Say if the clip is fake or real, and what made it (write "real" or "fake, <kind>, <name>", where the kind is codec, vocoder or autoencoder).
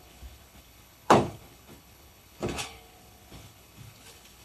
fake, codec, HILCodec